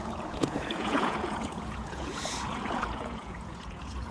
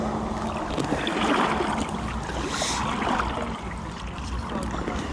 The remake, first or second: first